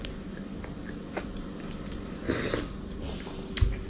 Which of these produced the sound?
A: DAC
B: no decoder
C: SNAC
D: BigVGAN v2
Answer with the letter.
B